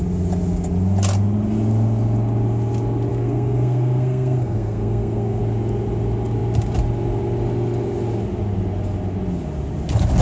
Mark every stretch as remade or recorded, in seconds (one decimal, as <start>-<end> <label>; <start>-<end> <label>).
0.0-3.1 recorded; 3.1-5.4 remade; 5.4-10.2 recorded